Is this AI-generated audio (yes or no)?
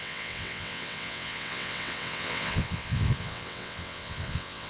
yes